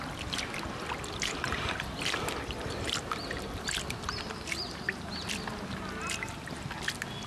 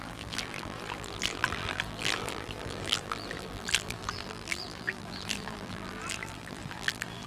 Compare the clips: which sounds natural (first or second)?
first